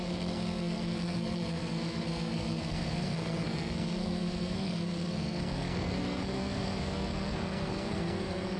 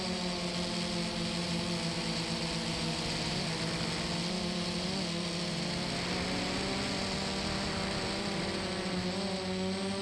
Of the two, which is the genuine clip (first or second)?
second